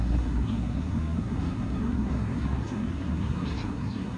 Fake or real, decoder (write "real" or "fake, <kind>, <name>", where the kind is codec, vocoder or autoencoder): fake, codec, SNAC